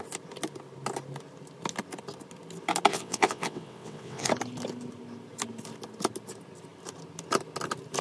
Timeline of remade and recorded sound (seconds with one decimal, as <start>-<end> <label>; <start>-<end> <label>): 0.0-2.9 recorded; 2.9-4.3 remade; 4.3-8.0 recorded